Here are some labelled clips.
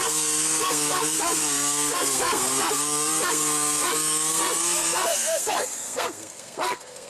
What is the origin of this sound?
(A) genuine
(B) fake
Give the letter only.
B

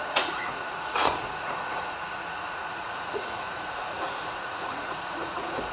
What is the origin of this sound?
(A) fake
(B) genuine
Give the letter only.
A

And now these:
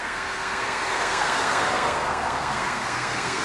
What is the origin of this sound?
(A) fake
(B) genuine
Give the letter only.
A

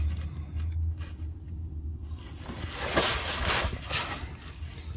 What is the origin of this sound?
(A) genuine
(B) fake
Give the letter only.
A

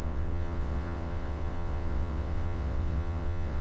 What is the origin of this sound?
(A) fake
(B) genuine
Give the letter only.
A